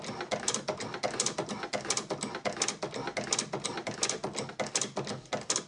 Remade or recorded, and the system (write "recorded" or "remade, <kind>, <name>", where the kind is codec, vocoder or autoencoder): recorded